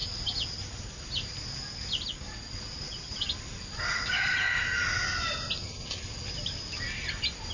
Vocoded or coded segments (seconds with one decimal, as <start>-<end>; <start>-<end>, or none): none